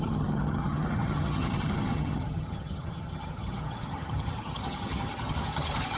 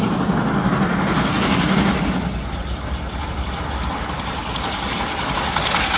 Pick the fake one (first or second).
first